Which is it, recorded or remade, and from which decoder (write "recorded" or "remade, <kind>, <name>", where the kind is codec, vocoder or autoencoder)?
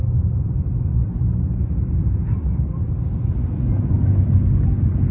recorded